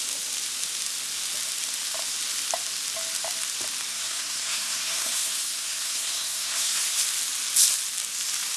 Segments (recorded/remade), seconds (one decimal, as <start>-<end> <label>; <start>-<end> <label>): 0.0-3.9 recorded; 3.9-7.0 remade; 7.0-8.6 recorded